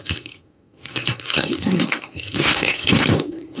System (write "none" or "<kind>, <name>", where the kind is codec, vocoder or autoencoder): codec, SNAC